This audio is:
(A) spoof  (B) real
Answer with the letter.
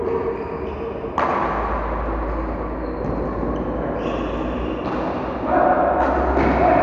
B